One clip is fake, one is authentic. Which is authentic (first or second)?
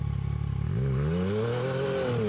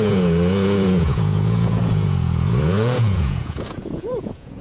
first